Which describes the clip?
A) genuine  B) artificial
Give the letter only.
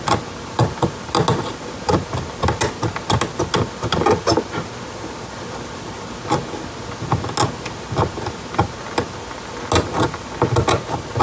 A